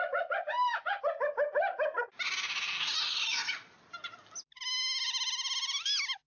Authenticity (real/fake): real